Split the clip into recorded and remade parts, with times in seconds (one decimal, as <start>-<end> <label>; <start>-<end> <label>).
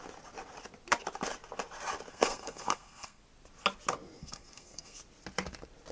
0.0-2.1 recorded; 2.1-3.2 remade; 3.2-4.2 recorded; 4.2-5.0 remade; 5.0-5.9 recorded